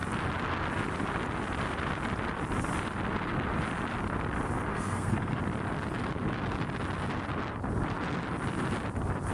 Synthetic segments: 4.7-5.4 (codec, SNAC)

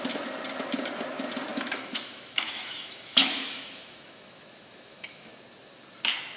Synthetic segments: 1.5-5.3 (autoencoder, DAC-VAE)

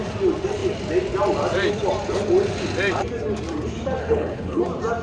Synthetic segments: 4.0-4.6 (codec, HILCodec)

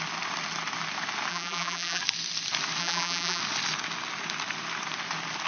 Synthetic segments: 1.3-2.0 (vocoder, BigVGAN v2); 2.8-3.4